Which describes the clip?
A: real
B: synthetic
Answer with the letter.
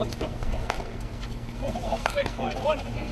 B